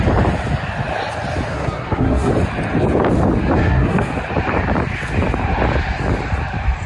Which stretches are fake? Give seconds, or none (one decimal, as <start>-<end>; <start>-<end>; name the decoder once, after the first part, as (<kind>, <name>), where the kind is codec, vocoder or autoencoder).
1.5-2.3 (codec, SNAC); 3.6-4.1